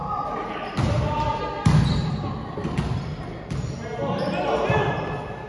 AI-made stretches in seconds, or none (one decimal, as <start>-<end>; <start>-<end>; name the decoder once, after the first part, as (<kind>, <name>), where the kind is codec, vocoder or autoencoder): 0.0-1.4 (vocoder, BigVGAN v2)